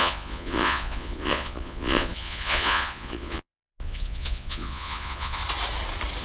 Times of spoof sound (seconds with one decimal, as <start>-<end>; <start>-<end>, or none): 0.0-5.4